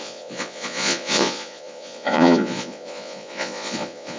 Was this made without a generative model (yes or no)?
no